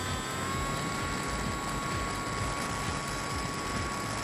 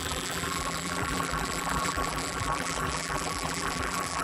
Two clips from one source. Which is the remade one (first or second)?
second